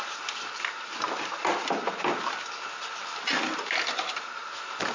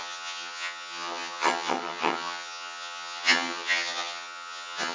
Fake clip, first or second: second